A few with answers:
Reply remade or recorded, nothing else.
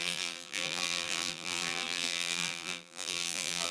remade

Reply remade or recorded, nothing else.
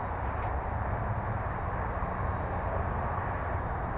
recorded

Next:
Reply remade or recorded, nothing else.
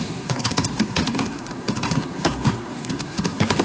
remade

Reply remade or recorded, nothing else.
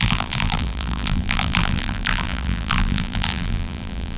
remade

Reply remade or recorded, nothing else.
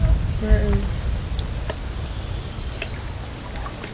recorded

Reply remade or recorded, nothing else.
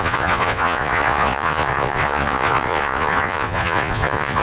remade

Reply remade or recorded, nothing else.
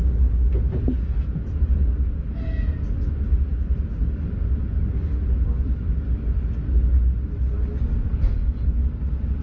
recorded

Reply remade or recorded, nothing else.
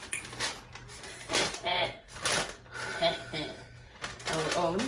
recorded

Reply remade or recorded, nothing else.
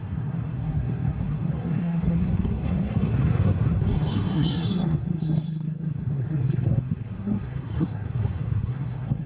remade